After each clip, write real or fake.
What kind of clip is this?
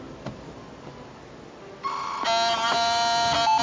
real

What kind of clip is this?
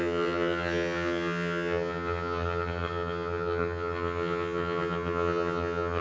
fake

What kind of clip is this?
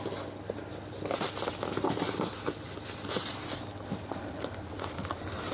real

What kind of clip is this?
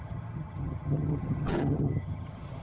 fake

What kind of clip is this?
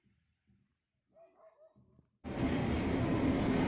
real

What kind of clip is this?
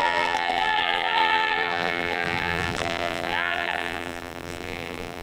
fake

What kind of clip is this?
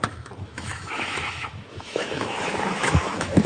fake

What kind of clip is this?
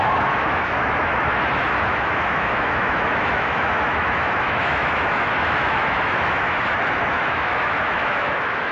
fake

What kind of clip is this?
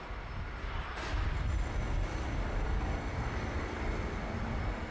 real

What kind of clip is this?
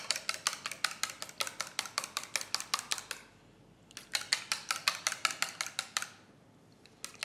real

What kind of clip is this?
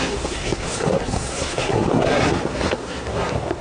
fake